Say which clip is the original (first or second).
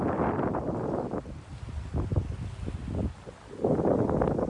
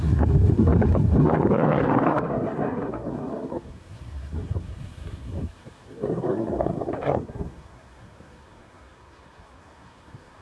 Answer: first